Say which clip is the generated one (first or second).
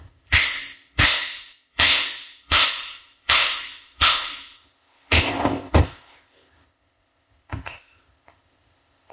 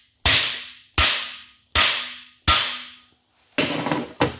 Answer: first